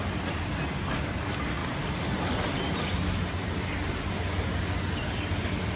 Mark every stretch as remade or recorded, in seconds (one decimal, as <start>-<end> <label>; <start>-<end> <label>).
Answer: 0.0-1.6 recorded; 1.6-4.0 remade; 4.0-5.8 recorded